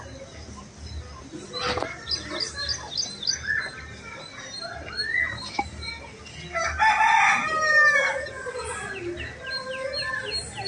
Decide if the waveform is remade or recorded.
recorded